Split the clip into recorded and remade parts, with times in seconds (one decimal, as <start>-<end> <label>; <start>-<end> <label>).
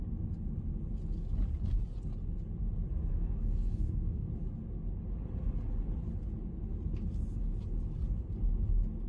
0.0-3.1 recorded; 3.1-4.3 remade; 4.3-9.1 recorded